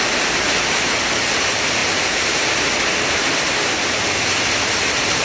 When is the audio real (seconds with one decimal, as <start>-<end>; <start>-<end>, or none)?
3.3-5.2